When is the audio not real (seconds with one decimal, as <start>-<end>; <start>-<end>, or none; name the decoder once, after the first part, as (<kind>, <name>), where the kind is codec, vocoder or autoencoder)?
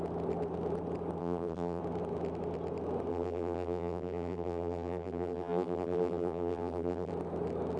1.2-1.8 (vocoder, BigVGAN v2); 3.1-7.1